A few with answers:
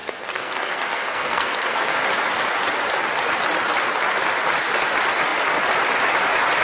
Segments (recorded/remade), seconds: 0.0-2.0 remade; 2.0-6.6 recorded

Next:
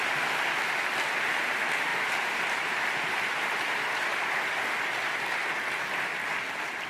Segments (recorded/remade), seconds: 0.0-1.9 recorded; 1.9-4.7 remade; 4.7-6.9 recorded